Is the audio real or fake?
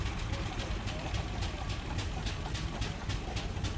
real